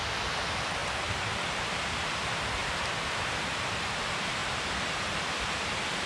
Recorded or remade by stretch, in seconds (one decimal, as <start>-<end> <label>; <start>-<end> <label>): 0.0-6.1 recorded